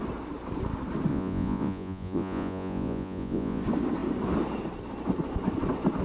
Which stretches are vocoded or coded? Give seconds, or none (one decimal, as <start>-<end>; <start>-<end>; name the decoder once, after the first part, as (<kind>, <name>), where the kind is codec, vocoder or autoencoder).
1.1-3.6 (vocoder, Vocos)